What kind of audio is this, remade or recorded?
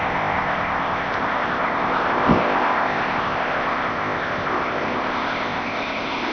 remade